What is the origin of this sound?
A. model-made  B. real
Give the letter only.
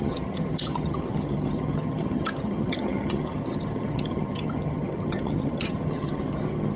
A